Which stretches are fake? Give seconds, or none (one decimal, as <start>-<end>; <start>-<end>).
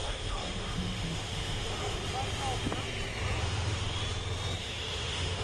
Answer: 0.0-2.0; 3.4-4.0; 4.6-5.4